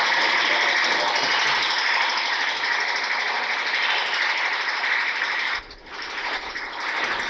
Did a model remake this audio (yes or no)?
no